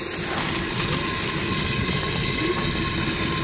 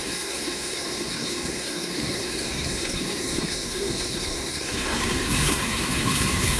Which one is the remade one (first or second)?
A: second